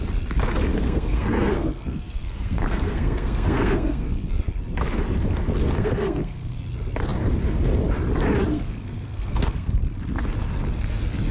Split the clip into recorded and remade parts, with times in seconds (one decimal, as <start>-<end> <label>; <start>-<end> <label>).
0.0-0.7 recorded; 0.7-4.3 remade; 4.3-5.6 recorded; 5.6-6.6 remade; 6.6-8.5 recorded; 8.5-9.8 remade; 9.8-11.3 recorded